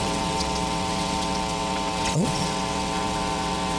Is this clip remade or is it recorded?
remade